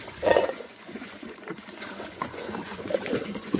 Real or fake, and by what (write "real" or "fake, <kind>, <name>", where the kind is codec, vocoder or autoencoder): fake, vocoder, Vocos